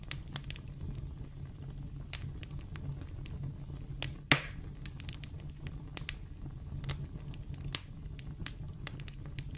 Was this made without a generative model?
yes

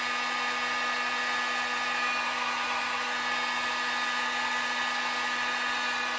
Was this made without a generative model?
yes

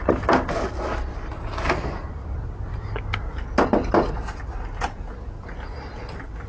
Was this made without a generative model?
yes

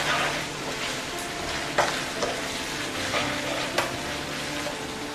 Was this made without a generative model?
yes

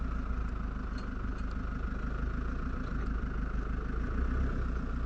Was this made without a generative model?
yes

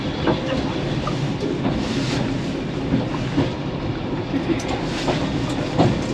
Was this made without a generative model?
yes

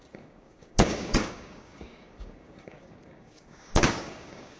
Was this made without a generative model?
no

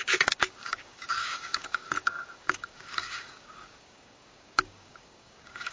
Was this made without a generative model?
no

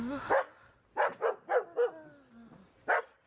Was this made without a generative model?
yes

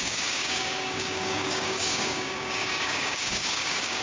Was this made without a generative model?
no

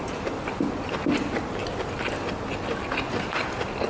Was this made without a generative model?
yes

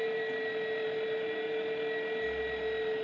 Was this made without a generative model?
yes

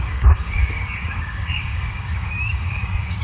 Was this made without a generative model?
no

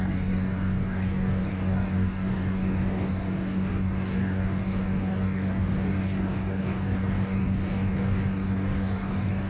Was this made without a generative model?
no